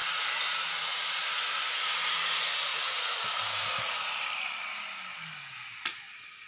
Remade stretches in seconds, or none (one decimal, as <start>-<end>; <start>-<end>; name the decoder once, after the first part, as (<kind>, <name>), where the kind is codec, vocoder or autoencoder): 0.0-1.5 (vocoder, Vocos); 2.7-3.4